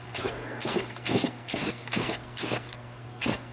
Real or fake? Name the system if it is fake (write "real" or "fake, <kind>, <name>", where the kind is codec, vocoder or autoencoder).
fake, codec, SNAC